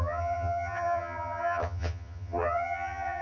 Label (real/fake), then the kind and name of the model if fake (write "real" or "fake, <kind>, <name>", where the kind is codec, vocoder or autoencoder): fake, vocoder, HiFi-GAN